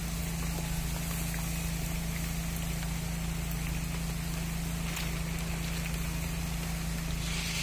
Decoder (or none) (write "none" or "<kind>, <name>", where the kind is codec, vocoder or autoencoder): none